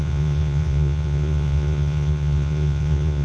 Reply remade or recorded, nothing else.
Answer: remade